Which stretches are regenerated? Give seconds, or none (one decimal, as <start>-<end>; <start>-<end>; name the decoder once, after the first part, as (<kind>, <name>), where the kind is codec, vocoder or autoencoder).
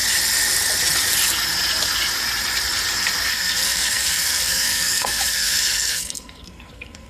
3.3-7.1 (codec, SNAC)